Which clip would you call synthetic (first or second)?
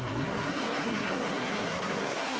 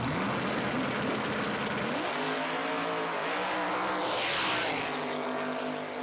first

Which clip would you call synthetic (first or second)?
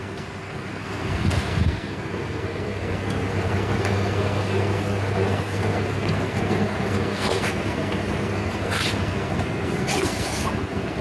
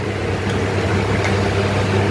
first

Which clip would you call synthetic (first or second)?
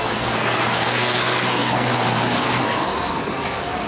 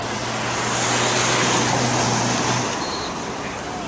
first